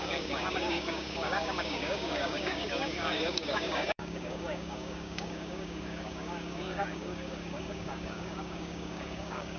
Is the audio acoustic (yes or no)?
no